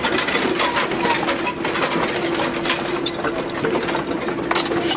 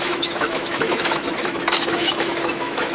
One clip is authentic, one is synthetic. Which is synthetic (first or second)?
second